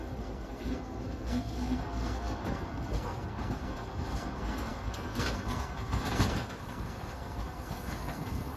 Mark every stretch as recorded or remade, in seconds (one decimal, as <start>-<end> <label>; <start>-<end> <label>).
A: 0.0-8.6 remade